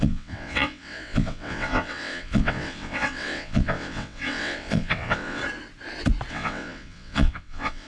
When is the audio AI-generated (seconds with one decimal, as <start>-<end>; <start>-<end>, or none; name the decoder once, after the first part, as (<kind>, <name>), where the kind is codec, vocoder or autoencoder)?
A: 0.0-5.4 (vocoder, WaveNeXt); 6.3-7.9